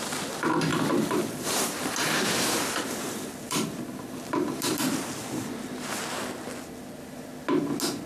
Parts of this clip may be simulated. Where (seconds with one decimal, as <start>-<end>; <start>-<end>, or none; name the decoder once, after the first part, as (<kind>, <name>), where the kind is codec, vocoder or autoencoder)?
0.7-5.1 (vocoder, BigVGAN v2)